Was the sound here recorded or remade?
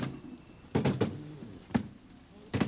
recorded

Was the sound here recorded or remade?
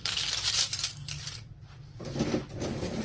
recorded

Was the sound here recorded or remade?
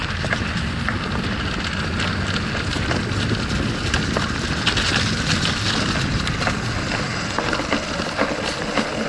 recorded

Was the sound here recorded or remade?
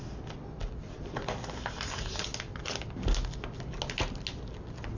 recorded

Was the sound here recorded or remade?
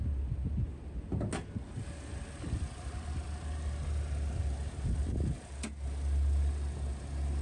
recorded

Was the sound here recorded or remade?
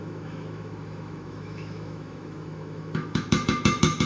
remade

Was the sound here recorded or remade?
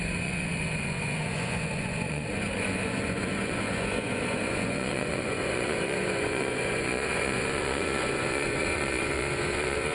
remade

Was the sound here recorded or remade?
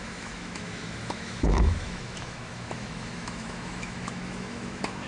remade